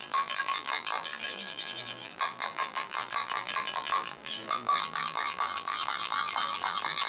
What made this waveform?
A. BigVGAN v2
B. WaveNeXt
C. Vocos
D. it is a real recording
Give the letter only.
A